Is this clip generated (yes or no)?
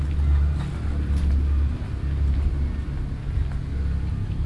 no